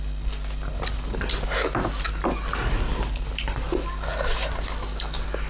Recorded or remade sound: recorded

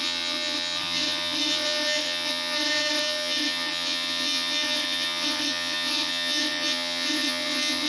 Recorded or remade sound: remade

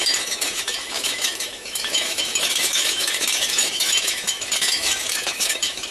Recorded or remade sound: remade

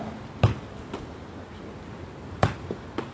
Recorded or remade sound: recorded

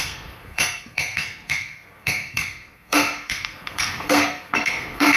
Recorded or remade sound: remade